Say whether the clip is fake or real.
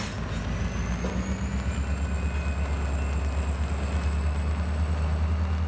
real